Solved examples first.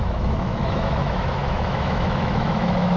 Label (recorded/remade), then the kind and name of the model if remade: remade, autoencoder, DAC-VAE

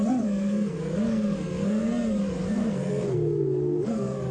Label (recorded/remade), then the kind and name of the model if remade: remade, codec, SNAC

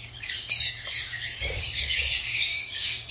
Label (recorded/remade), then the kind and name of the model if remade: remade, codec, DAC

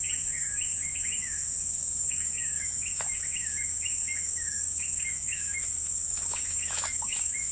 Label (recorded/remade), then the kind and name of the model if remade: remade, autoencoder, DAC-VAE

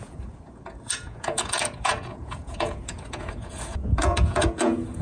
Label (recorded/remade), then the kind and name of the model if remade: remade, vocoder, Vocos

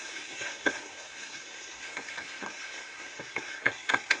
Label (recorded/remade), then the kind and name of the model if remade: remade, codec, SNAC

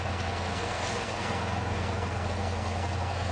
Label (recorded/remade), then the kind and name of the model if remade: remade, codec, SNAC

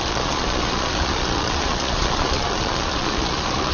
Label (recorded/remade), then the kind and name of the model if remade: remade, vocoder, Vocos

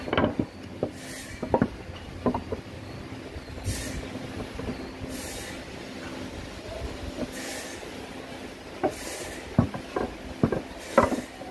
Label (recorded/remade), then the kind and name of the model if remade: recorded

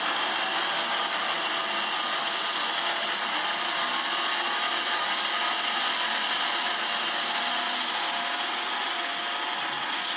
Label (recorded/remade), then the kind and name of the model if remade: recorded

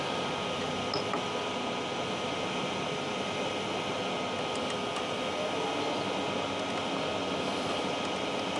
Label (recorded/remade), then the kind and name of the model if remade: recorded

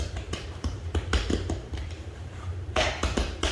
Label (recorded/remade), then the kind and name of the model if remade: remade, vocoder, BigVGAN v2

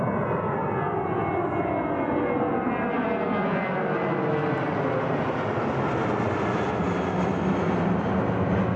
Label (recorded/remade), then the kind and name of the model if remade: recorded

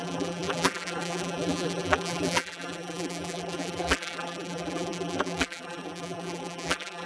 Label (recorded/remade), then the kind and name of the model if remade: remade, vocoder, BigVGAN v2